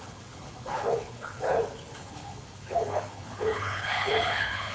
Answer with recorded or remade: remade